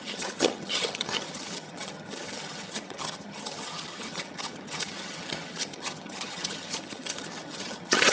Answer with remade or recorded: remade